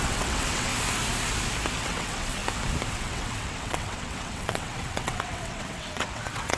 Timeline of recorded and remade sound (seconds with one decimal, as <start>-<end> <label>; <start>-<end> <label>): 0.0-0.7 remade; 0.7-1.8 recorded; 1.8-2.4 remade; 2.4-2.9 recorded; 2.9-6.6 remade